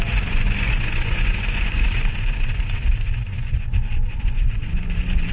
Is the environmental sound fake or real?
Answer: fake